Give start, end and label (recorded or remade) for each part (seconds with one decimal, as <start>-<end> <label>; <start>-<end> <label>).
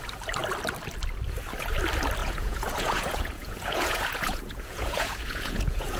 0.0-2.2 recorded; 2.2-6.0 remade